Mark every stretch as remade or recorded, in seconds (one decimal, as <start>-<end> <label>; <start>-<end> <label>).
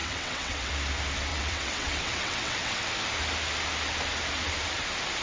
0.0-0.7 remade; 0.7-1.3 recorded; 1.3-2.9 remade; 2.9-5.2 recorded